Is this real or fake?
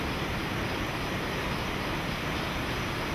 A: fake